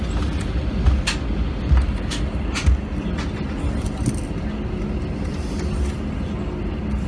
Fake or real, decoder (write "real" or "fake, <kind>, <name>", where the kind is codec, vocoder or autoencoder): real